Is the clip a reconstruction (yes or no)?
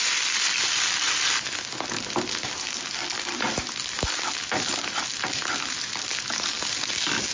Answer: no